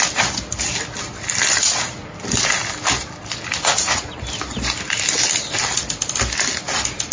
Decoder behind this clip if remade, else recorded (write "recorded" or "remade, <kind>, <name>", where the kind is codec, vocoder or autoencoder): recorded